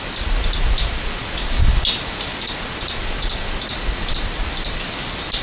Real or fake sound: real